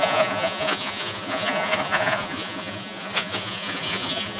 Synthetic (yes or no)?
yes